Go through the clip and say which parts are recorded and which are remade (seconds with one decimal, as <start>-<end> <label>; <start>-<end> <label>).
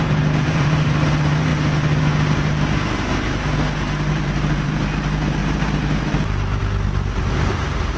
0.0-1.5 remade; 1.5-4.1 recorded; 4.1-6.6 remade; 6.6-7.4 recorded; 7.4-8.0 remade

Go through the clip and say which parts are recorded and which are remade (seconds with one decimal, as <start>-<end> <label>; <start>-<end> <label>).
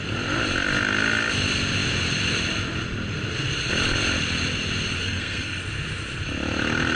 0.0-5.0 recorded; 5.0-5.6 remade; 5.6-7.0 recorded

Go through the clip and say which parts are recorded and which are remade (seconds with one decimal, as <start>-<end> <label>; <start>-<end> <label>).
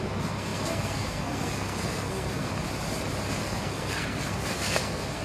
0.0-2.5 remade; 2.5-3.4 recorded; 3.4-5.2 remade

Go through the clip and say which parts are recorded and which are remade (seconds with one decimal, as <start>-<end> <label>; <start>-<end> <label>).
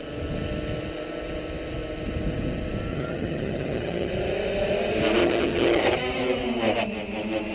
0.0-2.9 recorded; 2.9-4.1 remade; 4.1-5.2 recorded; 5.2-5.8 remade; 5.8-7.5 recorded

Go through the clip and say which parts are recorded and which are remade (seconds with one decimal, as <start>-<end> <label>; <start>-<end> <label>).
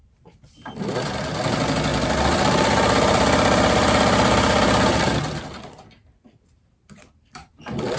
0.0-1.1 remade; 1.1-1.9 recorded; 1.9-6.7 remade; 6.7-7.3 recorded; 7.3-8.0 remade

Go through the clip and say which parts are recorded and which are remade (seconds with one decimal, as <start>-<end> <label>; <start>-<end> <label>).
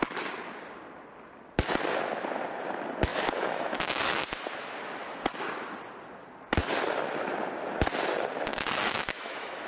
0.0-3.1 recorded; 3.1-4.2 remade; 4.2-8.5 recorded; 8.5-9.7 remade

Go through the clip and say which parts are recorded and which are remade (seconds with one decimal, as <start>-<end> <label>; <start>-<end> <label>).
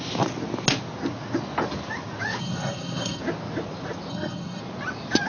0.0-2.4 recorded; 2.4-3.2 remade; 3.2-4.1 recorded; 4.1-4.6 remade; 4.6-5.3 recorded